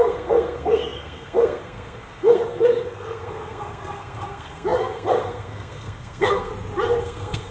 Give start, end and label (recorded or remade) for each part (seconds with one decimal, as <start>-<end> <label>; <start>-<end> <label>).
0.0-6.5 remade; 6.5-7.0 recorded; 7.0-7.5 remade